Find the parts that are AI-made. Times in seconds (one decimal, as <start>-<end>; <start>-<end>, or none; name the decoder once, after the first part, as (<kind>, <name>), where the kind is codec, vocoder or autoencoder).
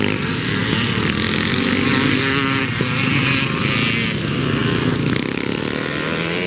none